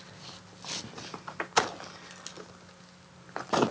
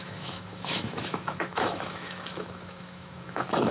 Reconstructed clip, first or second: second